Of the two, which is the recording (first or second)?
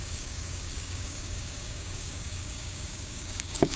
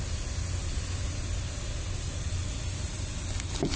second